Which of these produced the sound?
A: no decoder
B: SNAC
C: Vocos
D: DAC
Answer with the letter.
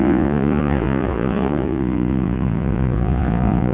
C